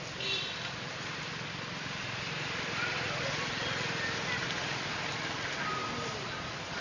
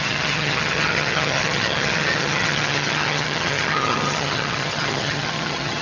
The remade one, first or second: second